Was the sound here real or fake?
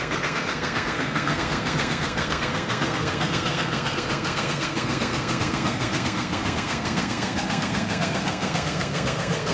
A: fake